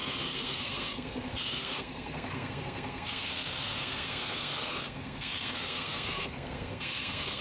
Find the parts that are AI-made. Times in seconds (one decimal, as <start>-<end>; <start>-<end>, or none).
0.0-7.4